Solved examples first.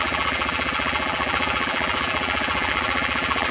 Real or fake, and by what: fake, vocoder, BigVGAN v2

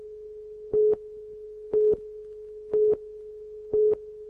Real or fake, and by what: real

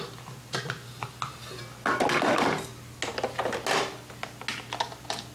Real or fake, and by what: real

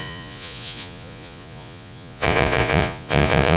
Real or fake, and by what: fake, vocoder, Vocos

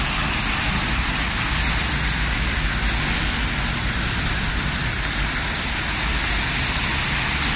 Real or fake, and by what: real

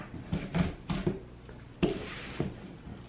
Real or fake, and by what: real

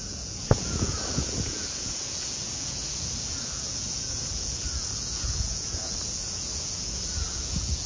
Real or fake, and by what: fake, vocoder, Vocos